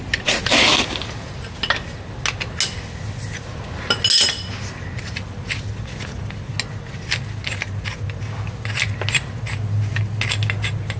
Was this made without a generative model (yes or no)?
yes